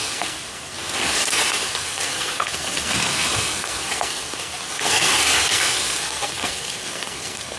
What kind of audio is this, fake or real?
fake